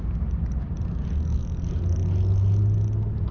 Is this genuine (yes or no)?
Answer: yes